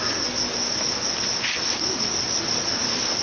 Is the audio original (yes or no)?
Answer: yes